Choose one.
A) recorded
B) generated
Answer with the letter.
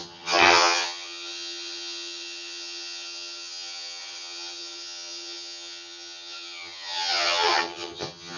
B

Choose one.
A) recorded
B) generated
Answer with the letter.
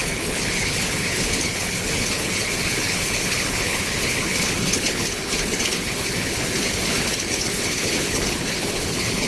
B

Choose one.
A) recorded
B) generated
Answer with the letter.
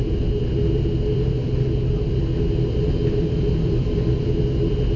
A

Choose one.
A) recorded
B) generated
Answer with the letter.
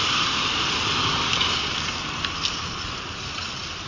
A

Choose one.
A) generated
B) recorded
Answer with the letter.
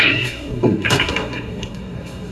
A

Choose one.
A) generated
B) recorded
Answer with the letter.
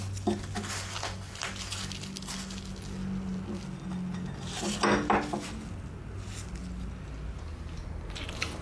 B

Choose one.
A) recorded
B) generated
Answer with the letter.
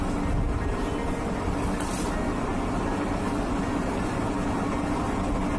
A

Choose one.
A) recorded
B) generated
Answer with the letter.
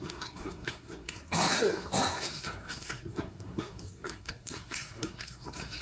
B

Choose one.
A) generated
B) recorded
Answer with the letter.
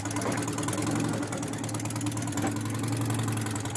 B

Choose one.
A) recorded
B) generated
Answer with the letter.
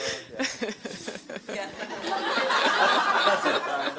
A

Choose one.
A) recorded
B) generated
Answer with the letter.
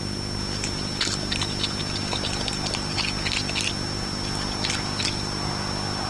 A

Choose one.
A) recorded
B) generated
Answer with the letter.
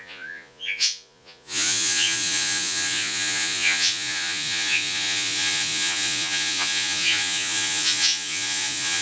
B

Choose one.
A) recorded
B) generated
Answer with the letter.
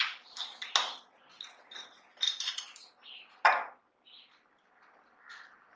A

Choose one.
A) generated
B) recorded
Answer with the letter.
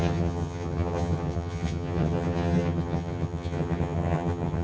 A